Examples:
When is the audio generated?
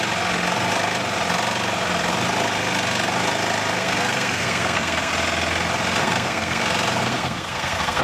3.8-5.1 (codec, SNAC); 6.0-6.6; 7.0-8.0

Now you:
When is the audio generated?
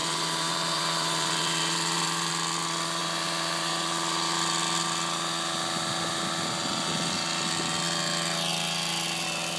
0.0-2.3 (vocoder, BigVGAN v2)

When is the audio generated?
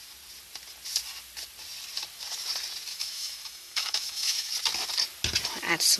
2.9-4.5 (autoencoder, DAC-VAE)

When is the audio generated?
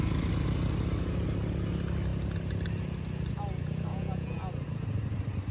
3.9-4.5 (vocoder, Vocos)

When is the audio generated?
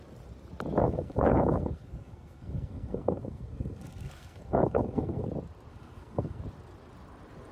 0.8-5.3 (codec, SNAC); 5.7-6.4